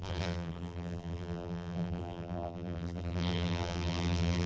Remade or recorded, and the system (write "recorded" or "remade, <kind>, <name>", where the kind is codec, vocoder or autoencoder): remade, vocoder, BigVGAN v2